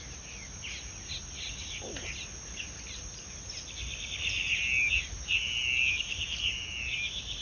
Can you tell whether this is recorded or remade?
recorded